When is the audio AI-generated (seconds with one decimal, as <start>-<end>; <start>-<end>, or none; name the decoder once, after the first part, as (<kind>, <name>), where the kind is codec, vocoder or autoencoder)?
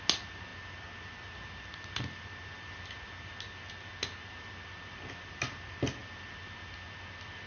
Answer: none